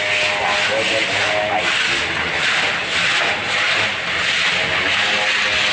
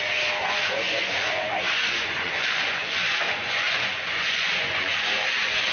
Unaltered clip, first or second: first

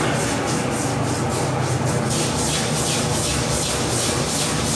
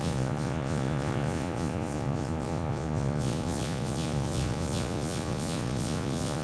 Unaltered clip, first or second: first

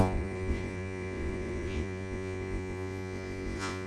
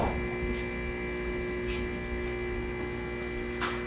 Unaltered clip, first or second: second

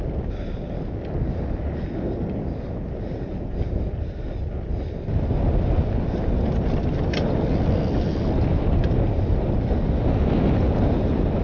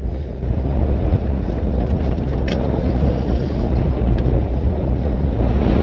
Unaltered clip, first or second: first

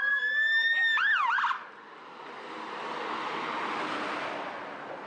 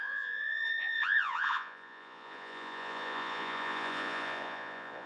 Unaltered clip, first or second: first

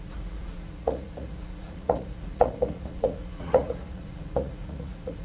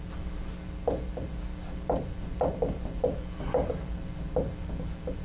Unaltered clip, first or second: second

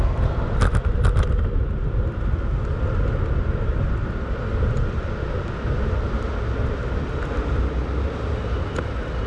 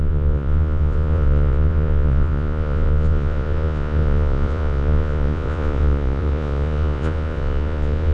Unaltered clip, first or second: first